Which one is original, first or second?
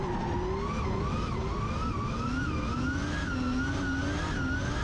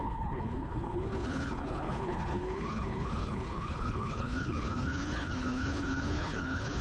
first